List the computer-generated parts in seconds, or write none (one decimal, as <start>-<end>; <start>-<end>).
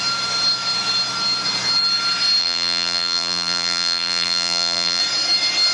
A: 2.4-5.0